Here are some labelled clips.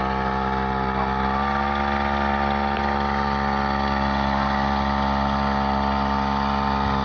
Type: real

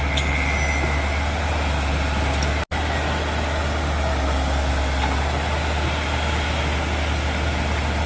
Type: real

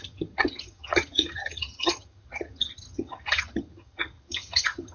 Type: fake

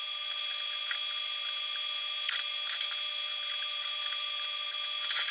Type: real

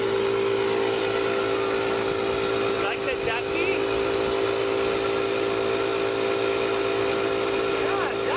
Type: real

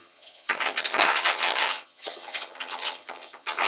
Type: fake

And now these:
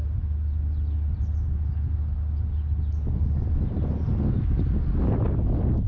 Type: real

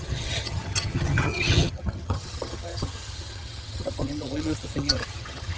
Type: fake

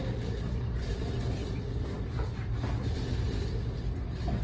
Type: real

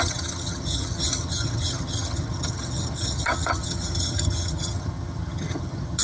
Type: fake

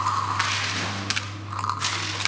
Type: real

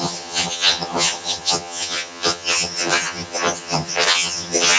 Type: fake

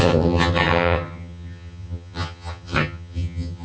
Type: fake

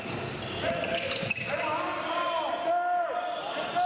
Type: real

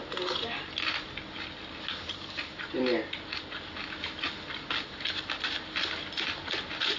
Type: real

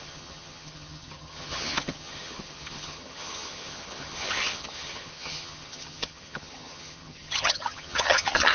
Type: fake